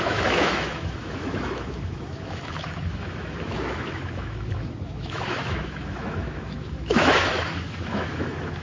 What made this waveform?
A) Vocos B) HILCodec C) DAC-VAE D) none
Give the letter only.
C